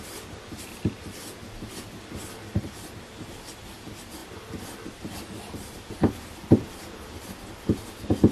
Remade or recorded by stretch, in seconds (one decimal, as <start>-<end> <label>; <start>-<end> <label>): 0.0-8.3 recorded